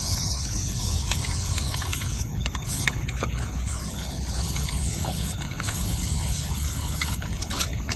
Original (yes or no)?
no